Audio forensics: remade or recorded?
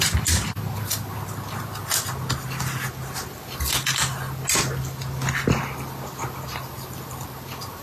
recorded